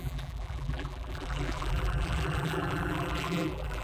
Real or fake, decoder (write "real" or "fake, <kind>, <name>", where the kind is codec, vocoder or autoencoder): fake, vocoder, BigVGAN v2